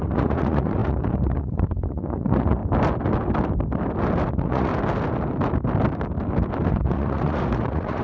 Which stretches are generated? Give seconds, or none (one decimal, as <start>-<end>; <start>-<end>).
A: 0.0-2.6; 4.3-4.7; 6.7-8.0